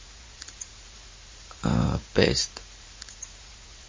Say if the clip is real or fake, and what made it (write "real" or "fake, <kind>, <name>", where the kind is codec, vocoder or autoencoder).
fake, vocoder, Vocos